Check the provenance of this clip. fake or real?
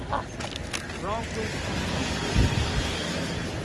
real